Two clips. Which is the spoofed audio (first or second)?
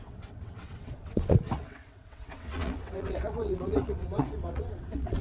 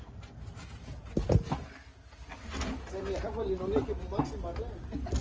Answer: first